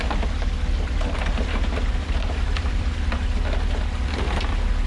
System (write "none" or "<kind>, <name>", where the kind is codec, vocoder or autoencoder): vocoder, BigVGAN v2